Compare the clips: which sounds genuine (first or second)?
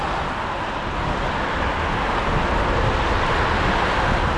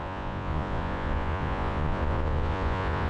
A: first